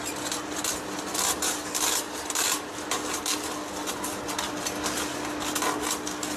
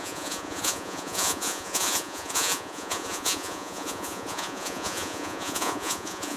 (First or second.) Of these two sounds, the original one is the first